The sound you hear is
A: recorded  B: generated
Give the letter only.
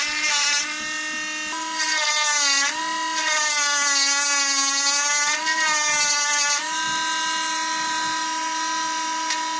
A